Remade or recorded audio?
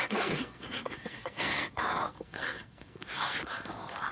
remade